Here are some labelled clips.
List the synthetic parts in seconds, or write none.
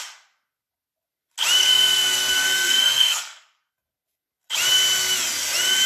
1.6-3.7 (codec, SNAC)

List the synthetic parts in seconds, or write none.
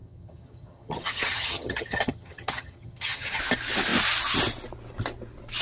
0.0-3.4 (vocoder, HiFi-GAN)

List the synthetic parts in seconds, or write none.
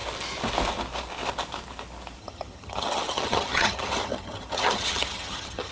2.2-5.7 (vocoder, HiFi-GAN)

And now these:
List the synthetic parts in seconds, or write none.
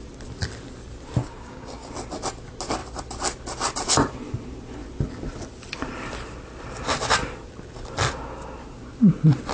1.2-1.9 (codec, DAC)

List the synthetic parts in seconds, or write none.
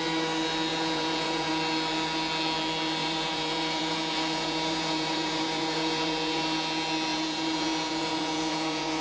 0.7-1.5 (vocoder, Vocos); 3.0-6.4; 7.1-9.0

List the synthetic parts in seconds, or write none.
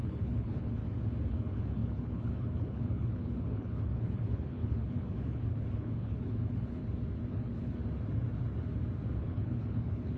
0.0-0.8 (codec, HILCodec); 1.3-6.8; 7.3-7.8; 9.2-10.2